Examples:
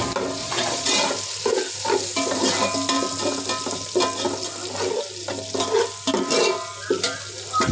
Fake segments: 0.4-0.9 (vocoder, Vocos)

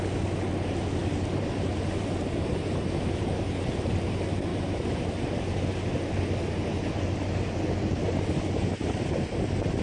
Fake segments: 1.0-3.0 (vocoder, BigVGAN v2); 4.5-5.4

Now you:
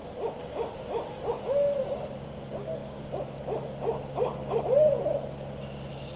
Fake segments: none

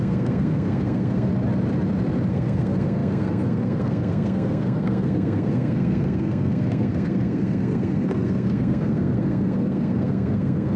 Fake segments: 0.0-1.3 (codec, SNAC); 2.3-10.8

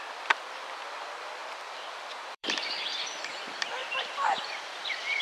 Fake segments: 0.0-5.2 (vocoder, BigVGAN v2)

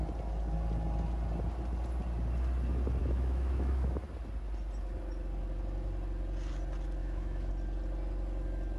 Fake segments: 3.0-4.0 (autoencoder, DAC-VAE); 7.0-7.5